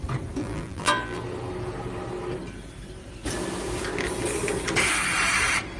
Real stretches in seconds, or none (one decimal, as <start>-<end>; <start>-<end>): 0.0-0.4; 1.2-5.8